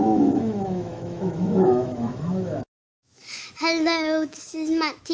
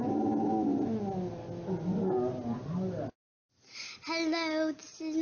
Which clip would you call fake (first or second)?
first